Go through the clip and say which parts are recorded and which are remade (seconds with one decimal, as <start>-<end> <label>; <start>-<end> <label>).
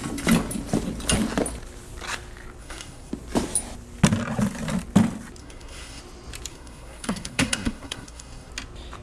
0.0-2.6 recorded; 2.6-3.1 remade; 3.1-5.4 recorded; 5.4-6.0 remade; 6.0-6.5 recorded; 6.5-8.5 remade; 8.5-9.0 recorded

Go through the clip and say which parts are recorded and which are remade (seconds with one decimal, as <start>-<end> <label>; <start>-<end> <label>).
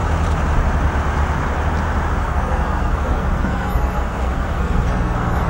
0.0-2.2 recorded; 2.2-5.5 remade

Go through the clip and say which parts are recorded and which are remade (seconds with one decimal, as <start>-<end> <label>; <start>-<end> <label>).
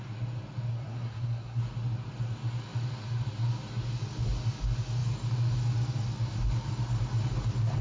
0.0-0.7 recorded; 0.7-1.6 remade; 1.6-7.8 recorded